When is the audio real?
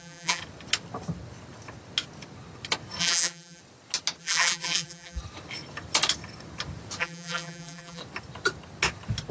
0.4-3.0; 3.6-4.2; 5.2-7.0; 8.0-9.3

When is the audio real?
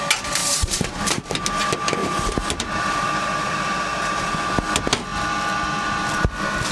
0.0-0.4; 1.4-2.0; 4.3-6.7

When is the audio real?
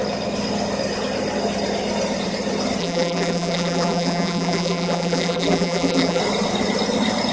0.0-2.8; 6.2-7.3